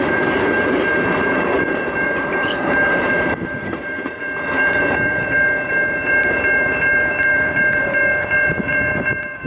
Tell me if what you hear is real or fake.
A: fake